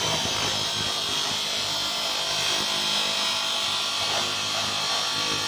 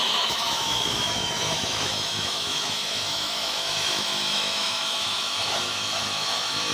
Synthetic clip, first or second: second